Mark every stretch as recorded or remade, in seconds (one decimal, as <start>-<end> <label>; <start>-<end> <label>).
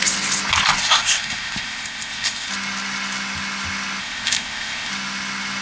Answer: 0.0-0.8 recorded; 0.8-2.5 remade; 2.5-4.0 recorded; 4.0-4.9 remade; 4.9-5.6 recorded